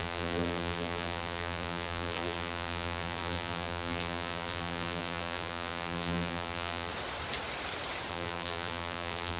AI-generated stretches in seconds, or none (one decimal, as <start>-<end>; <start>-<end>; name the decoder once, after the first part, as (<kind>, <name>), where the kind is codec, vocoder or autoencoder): 0.0-6.9 (vocoder, BigVGAN v2); 8.1-9.4

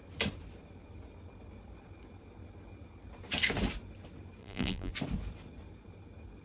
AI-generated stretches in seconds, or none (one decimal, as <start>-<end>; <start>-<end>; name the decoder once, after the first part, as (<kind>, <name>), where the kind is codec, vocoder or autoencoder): 4.4-4.9 (vocoder, BigVGAN v2)

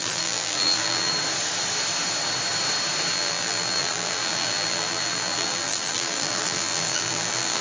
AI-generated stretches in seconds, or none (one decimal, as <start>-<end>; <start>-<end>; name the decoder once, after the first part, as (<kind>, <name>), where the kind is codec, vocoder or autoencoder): 0.0-1.1 (vocoder, BigVGAN v2); 3.1-7.6

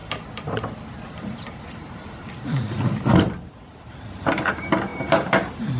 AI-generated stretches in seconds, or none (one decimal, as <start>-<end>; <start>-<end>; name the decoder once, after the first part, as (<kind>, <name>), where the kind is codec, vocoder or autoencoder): 0.0-3.5 (vocoder, BigVGAN v2); 4.9-5.8

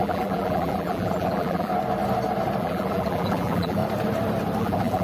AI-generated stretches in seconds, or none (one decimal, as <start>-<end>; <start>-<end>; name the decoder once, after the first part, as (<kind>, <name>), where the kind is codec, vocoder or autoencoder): 0.0-1.7 (vocoder, BigVGAN v2); 2.6-3.8; 4.6-5.0

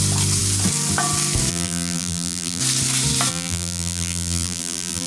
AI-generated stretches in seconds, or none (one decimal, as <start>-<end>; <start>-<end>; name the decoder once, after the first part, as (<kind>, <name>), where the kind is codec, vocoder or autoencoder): 1.5-2.6 (vocoder, BigVGAN v2); 3.3-5.1

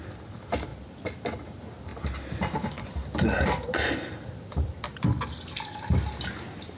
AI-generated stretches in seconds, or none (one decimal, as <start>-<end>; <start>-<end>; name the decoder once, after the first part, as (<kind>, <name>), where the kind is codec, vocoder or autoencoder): 0.0-0.7 (vocoder, BigVGAN v2); 1.3-6.8